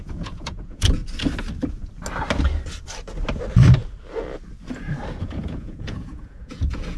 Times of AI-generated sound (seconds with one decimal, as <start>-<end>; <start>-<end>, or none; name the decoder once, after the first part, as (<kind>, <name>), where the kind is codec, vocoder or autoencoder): 0.0-1.0 (vocoder, Vocos); 5.2-7.0